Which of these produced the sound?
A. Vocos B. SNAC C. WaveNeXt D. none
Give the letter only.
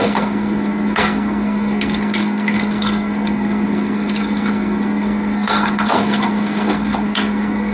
B